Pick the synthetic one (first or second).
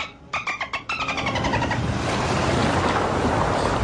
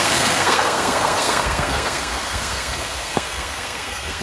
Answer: second